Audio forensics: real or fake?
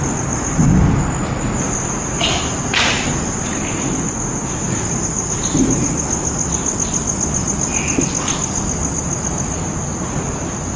real